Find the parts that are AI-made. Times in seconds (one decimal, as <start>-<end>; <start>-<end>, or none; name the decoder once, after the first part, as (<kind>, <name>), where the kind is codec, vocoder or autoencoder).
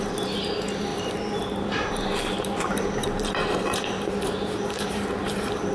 0.0-5.7 (vocoder, BigVGAN v2)